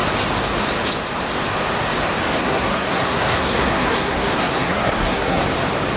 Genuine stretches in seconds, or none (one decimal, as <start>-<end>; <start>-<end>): 0.0-2.4; 5.4-6.0